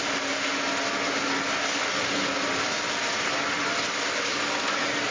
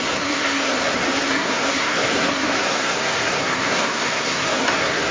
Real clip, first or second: first